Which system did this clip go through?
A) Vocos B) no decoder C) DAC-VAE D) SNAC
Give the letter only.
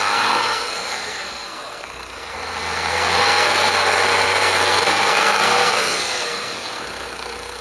D